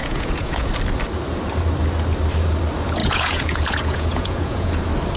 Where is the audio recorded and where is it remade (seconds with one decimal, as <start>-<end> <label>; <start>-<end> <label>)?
0.0-0.7 remade; 0.7-3.0 recorded; 3.0-4.7 remade; 4.7-5.2 recorded